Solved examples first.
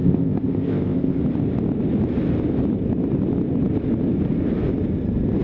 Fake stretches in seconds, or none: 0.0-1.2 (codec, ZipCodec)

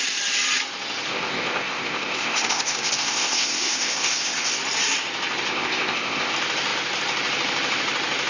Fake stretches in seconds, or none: 1.1-4.6 (codec, ZipCodec); 5.5-6.3

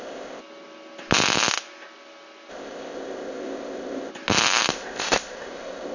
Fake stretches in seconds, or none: 0.0-0.4 (codec, ZipCodec); 2.5-4.1; 4.7-5.9

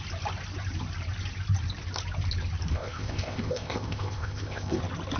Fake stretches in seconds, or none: 2.7-4.8 (codec, ZipCodec)

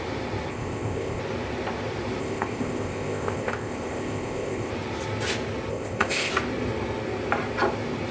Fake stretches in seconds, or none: 0.5-1.2 (codec, ZipCodec); 2.2-4.7; 5.7-6.3

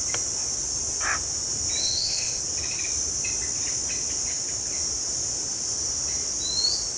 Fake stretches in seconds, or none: 1.8-2.4 (codec, ZipCodec)

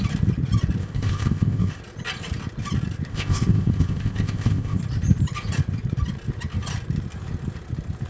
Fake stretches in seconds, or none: 0.8-1.8 (codec, ZipCodec); 3.1-4.8